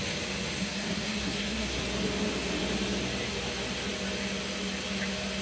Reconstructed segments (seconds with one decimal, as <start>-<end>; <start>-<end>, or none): 0.6-1.8